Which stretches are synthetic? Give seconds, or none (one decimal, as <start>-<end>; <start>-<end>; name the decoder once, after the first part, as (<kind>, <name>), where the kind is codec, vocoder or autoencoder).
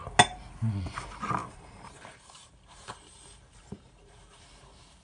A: 1.4-4.4 (vocoder, BigVGAN v2)